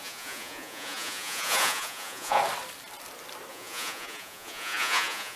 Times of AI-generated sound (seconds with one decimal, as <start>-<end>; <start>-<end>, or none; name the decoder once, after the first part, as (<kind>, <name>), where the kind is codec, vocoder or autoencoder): 0.0-2.4 (vocoder, Vocos); 3.5-5.4